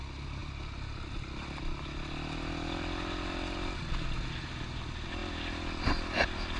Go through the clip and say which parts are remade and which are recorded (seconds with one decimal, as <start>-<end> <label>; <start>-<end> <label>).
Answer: 0.0-6.6 recorded